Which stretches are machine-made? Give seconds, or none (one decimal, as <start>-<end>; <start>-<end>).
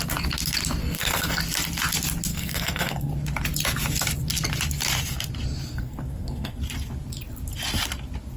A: 0.8-1.4; 2.3-3.1; 5.7-6.6